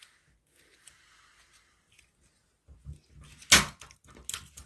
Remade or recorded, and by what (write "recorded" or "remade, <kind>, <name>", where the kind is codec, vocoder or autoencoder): recorded